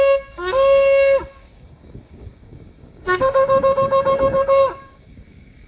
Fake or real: fake